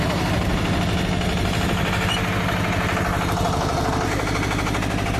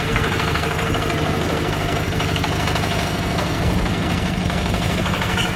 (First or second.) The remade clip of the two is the second